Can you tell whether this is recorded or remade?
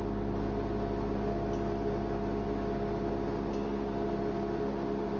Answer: recorded